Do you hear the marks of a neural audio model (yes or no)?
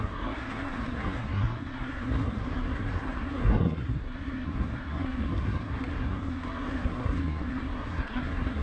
yes